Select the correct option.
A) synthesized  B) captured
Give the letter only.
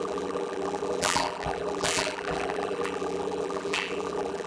A